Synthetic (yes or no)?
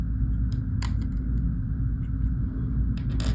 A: no